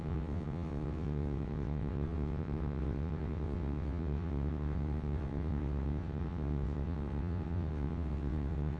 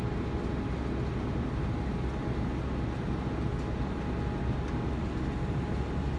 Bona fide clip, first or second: second